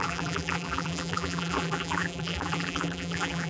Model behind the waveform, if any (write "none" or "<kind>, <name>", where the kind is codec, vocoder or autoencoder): vocoder, BigVGAN v2